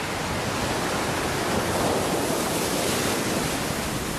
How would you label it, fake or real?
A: real